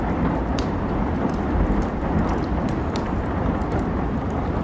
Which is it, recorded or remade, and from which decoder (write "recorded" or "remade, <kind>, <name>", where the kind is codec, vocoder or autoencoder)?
remade, vocoder, BigVGAN v2